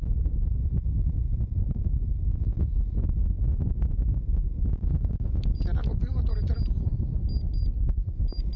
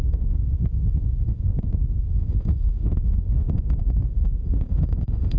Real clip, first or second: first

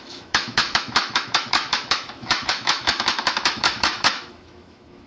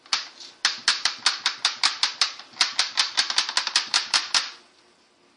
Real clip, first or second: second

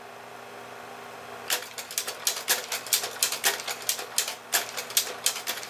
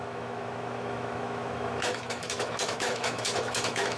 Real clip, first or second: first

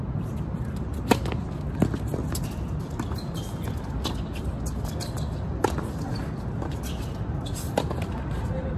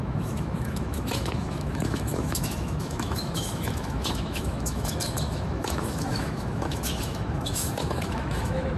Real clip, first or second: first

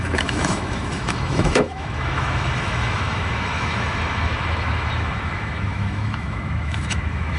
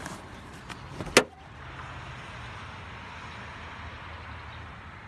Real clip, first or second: second